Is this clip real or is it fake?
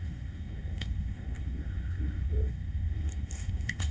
fake